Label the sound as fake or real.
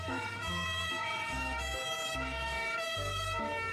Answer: fake